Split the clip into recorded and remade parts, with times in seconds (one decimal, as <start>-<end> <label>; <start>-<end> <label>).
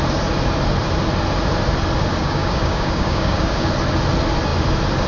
0.0-2.2 recorded; 2.2-3.7 remade; 3.7-5.1 recorded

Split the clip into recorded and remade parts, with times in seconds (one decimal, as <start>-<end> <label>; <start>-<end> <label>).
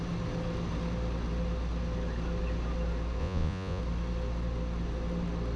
0.0-3.2 recorded; 3.2-3.8 remade; 3.8-5.6 recorded